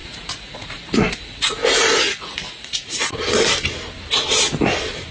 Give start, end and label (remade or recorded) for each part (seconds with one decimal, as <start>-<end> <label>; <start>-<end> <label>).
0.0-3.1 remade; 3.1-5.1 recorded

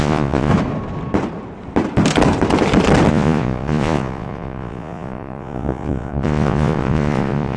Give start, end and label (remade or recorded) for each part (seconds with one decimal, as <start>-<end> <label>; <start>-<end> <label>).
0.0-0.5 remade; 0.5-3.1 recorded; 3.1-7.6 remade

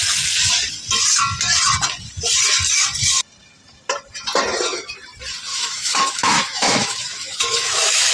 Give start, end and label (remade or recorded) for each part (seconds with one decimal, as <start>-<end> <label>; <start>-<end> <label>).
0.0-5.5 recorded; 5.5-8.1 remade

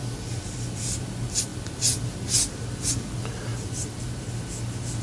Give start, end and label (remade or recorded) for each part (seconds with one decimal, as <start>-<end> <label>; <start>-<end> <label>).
0.0-3.5 recorded; 3.5-4.1 remade; 4.1-5.0 recorded

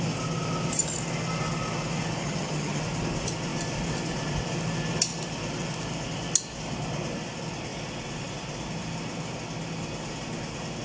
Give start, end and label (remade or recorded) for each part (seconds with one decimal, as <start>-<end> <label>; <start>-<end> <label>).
0.0-2.2 recorded; 2.2-2.8 remade; 2.8-10.8 recorded